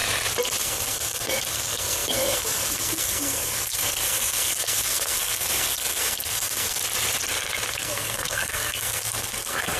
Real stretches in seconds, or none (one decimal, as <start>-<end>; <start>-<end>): 0.0-0.6; 6.8-7.7